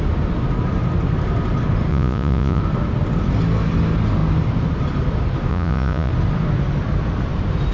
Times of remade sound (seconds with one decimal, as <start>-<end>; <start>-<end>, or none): 1.9-2.6; 5.5-6.1

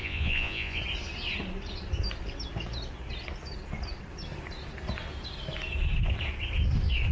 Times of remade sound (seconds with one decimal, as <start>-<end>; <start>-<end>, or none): 0.0-0.8

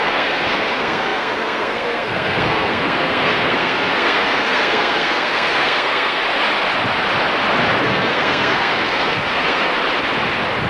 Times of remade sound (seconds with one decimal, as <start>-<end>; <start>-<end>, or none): 0.0-6.2; 7.8-9.7

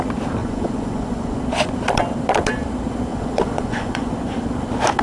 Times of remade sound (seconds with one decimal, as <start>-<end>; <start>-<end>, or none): 0.4-1.4; 3.1-4.1

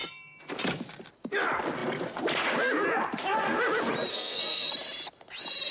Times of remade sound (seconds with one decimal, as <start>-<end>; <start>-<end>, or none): 4.1-4.7

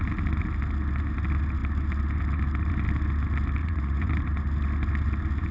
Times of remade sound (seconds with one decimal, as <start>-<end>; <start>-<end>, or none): 3.6-4.1